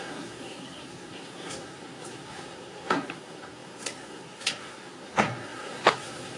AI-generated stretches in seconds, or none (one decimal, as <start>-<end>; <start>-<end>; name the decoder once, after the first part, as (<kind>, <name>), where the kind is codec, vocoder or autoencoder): 0.0-6.4 (codec, SNAC)